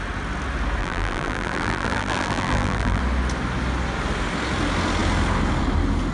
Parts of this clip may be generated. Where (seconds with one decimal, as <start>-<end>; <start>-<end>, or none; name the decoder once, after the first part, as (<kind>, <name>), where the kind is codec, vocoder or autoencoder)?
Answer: 0.8-3.0 (vocoder, BigVGAN v2)